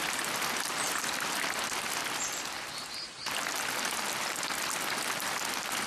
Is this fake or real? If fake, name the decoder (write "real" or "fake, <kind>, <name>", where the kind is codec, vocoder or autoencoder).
real